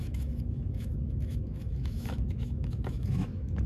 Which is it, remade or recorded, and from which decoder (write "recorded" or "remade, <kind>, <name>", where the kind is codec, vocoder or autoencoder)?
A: remade, autoencoder, DAC-VAE